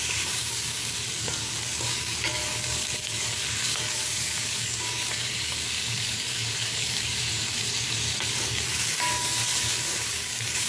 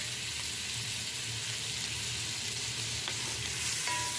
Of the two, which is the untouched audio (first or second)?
second